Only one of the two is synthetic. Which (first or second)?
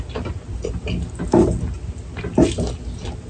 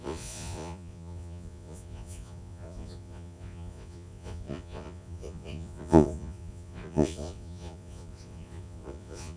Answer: second